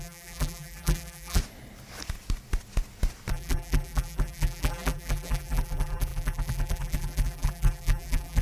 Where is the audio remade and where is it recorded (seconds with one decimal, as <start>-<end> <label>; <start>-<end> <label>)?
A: 0.0-1.4 remade; 1.4-3.3 recorded; 3.3-8.4 remade